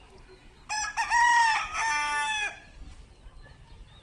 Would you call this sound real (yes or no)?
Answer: yes